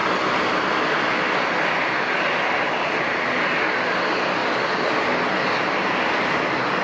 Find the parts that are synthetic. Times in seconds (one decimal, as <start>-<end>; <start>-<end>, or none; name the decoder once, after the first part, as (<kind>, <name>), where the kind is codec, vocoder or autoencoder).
none